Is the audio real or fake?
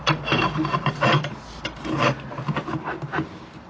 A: real